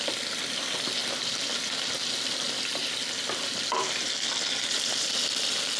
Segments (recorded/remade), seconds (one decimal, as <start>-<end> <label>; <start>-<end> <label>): 0.0-5.8 recorded